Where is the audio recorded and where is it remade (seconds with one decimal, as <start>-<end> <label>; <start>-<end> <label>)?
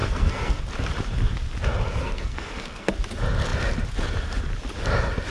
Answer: 0.0-0.6 remade; 0.6-2.0 recorded; 2.0-2.9 remade; 2.9-5.3 recorded